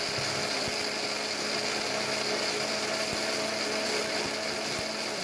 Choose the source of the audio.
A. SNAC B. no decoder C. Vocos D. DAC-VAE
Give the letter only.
B